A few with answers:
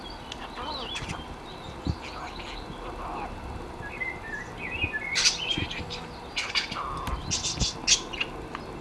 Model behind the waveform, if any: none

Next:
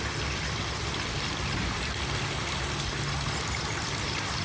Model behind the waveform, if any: none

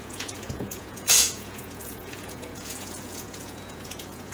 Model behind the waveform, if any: vocoder, Vocos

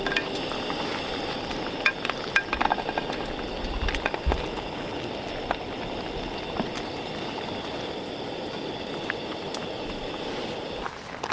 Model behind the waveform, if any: none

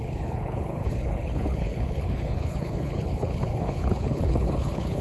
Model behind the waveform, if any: codec, HILCodec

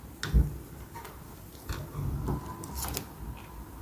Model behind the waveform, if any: none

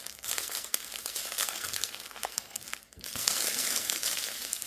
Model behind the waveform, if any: codec, SNAC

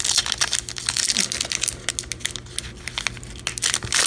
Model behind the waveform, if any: none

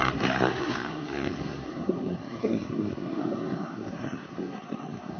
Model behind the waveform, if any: codec, SNAC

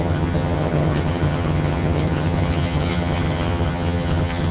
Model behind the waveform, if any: vocoder, HiFi-GAN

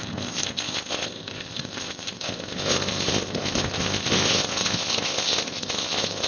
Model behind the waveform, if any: codec, ZipCodec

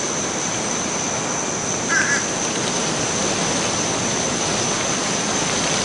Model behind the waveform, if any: none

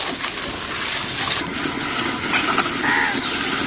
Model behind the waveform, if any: none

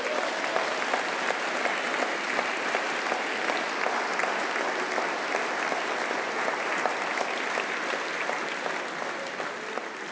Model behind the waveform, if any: none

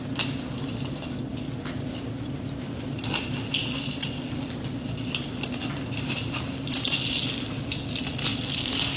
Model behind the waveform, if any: none